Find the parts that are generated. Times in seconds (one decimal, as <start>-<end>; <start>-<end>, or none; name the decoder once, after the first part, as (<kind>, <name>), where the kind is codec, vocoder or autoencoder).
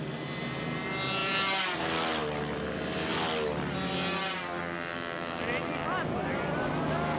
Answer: none